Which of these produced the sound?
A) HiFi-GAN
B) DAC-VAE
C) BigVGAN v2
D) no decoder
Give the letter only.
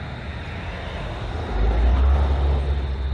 D